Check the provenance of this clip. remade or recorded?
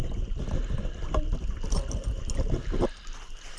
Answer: recorded